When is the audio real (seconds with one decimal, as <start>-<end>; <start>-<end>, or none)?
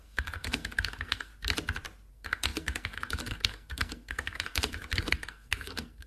1.3-2.1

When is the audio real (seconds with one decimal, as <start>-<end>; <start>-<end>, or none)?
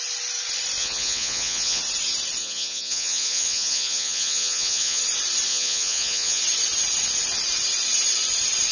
0.0-0.8; 1.8-2.4; 5.0-5.5; 6.4-8.7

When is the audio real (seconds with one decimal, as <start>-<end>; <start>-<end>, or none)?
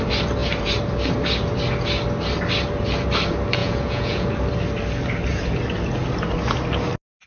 0.0-3.6; 4.3-7.3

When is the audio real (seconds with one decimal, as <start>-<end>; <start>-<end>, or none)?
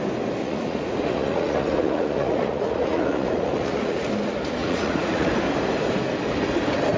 0.0-0.4; 4.1-4.6; 5.3-7.0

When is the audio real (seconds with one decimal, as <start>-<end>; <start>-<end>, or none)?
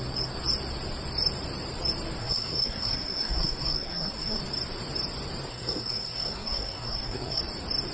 0.0-2.2; 4.4-5.5; 7.4-7.9